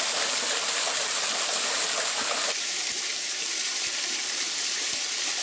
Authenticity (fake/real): real